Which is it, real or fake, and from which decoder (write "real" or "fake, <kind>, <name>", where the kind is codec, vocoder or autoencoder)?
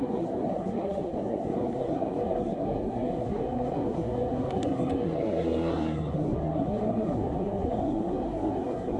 fake, codec, SNAC